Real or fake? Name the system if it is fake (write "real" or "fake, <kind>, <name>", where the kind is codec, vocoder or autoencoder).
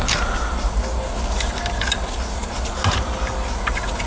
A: real